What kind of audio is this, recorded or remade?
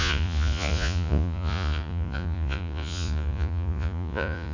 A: remade